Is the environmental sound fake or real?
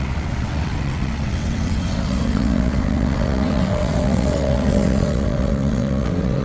fake